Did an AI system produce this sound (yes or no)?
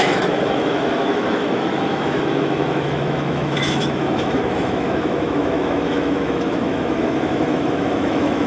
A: yes